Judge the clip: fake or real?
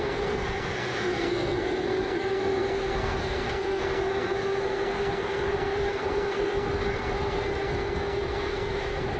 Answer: fake